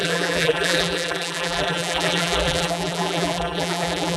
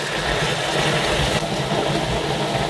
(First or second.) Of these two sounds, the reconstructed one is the first